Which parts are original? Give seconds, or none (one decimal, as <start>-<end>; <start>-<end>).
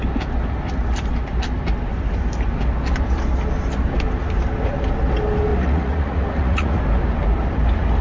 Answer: 0.0-5.5; 6.8-8.0